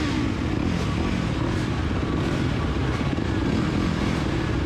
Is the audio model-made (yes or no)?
no